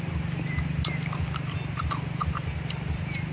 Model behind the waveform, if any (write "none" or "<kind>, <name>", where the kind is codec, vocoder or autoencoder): none